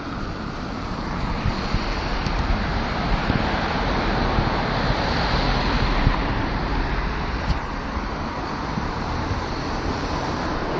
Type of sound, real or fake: fake